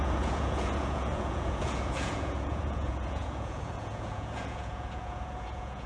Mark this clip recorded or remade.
remade